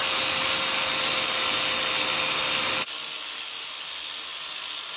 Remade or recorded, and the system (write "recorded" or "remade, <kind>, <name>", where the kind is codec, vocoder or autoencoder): recorded